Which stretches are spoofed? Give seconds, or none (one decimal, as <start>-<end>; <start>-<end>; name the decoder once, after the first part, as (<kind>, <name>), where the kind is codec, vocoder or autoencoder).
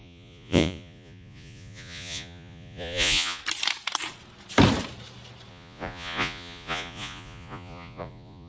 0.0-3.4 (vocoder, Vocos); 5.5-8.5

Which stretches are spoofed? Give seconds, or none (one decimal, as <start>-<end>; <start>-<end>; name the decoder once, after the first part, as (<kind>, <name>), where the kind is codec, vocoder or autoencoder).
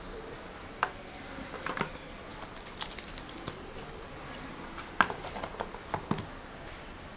none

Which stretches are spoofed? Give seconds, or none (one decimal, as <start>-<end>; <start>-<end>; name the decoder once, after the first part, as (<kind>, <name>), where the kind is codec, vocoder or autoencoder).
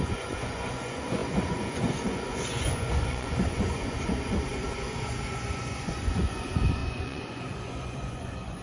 0.0-8.6 (vocoder, Vocos)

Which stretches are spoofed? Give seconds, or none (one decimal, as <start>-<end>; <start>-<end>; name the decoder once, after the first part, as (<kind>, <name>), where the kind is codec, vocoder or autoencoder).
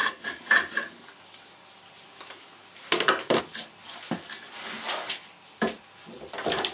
none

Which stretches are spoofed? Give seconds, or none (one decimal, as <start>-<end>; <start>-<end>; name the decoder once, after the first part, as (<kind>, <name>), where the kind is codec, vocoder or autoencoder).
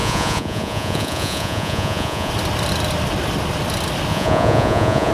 0.0-2.3 (vocoder, Vocos); 4.1-5.1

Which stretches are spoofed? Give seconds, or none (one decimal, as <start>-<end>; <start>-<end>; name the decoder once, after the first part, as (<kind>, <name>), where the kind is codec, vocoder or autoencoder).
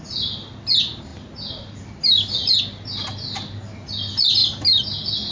none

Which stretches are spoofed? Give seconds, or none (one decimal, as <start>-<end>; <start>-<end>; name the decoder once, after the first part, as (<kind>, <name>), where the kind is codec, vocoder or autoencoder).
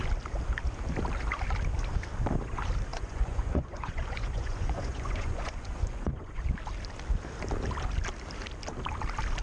2.9-6.4 (vocoder, Vocos)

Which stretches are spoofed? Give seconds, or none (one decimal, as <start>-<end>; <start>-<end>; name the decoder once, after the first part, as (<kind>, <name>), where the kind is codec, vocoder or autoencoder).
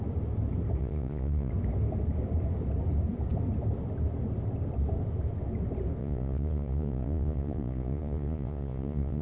0.8-1.5 (vocoder, Vocos); 6.0-9.2